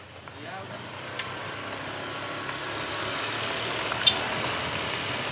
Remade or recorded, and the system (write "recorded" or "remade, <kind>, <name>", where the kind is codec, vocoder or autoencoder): recorded